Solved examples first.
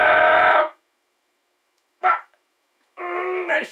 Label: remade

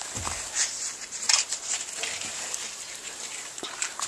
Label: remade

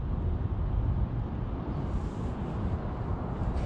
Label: recorded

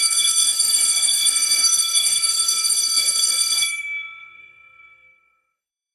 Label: remade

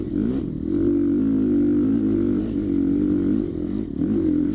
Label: recorded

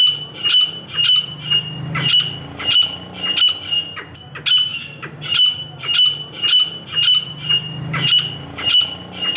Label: recorded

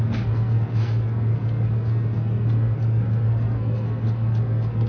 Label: remade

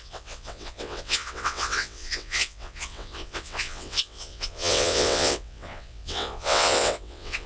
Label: remade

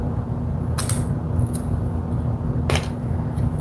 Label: recorded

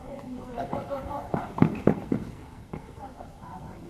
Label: remade